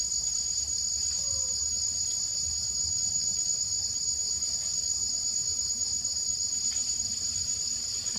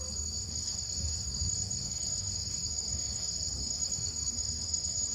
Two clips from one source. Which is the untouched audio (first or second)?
first